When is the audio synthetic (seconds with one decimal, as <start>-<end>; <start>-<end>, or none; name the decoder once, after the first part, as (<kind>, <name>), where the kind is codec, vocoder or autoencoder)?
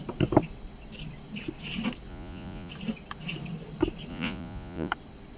2.1-2.7 (vocoder, Vocos); 4.1-4.9